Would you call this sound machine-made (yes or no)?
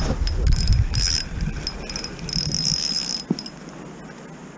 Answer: no